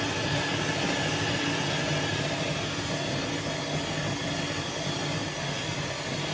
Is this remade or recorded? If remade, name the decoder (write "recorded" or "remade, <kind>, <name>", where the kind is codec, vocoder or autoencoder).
recorded